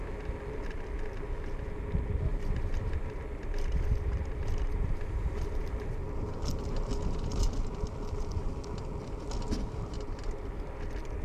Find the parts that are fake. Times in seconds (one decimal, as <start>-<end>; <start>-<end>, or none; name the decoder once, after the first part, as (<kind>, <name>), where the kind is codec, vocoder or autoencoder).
2.3-6.9 (vocoder, BigVGAN v2)